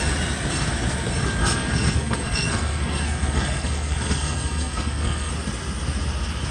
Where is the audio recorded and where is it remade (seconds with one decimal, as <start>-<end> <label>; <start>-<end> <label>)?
0.0-1.4 recorded; 1.4-5.3 remade; 5.3-6.5 recorded